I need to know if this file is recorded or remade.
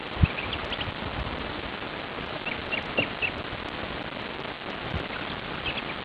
recorded